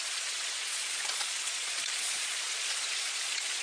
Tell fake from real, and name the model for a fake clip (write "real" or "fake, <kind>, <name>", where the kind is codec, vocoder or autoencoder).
fake, vocoder, Vocos